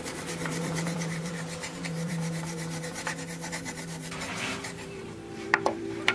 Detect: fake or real fake